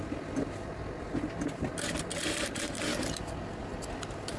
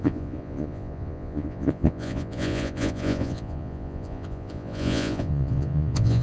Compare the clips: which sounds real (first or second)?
first